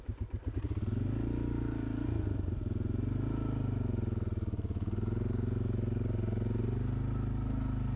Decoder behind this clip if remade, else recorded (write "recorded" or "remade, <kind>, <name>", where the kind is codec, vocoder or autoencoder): recorded